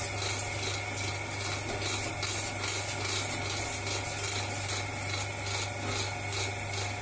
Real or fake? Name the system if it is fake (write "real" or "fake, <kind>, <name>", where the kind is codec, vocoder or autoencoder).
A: real